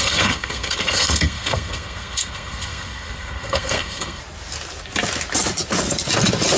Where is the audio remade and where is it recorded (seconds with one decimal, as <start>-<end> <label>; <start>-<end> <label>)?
0.0-4.2 remade; 4.2-6.6 recorded